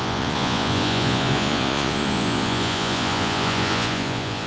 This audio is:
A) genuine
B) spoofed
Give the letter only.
B